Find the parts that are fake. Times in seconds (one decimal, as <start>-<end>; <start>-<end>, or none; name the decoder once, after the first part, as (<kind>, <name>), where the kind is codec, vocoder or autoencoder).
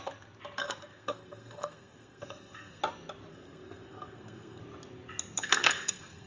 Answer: 0.6-2.8 (codec, SNAC); 3.3-4.6; 5.4-6.3